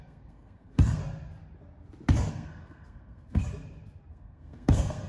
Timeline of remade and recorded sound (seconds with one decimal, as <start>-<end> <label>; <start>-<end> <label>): 0.0-1.0 remade; 1.0-2.3 recorded; 2.3-3.4 remade; 3.4-4.1 recorded; 4.1-5.1 remade